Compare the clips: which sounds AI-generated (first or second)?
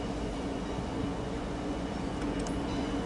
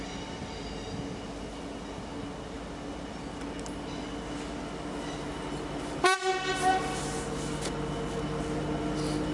first